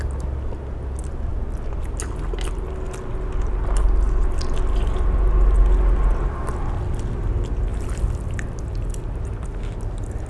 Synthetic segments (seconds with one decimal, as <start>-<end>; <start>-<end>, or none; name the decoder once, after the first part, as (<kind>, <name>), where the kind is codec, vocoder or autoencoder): 7.7-8.2 (vocoder, BigVGAN v2)